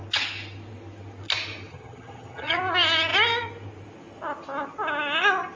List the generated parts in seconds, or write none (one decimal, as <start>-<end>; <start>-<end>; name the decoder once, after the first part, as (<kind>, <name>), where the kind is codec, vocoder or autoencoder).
1.7-2.6 (vocoder, HiFi-GAN)